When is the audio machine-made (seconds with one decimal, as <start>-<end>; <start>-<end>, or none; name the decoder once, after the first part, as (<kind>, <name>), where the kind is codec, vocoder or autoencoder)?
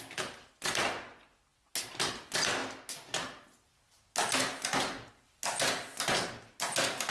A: none